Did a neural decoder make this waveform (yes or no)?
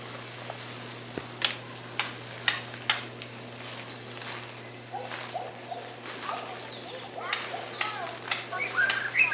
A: no